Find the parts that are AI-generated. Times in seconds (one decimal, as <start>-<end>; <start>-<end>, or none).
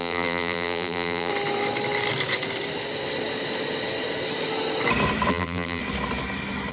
0.0-1.3; 5.3-5.8